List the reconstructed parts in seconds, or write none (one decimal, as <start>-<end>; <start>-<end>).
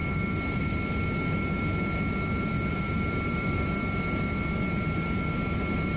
2.7-3.7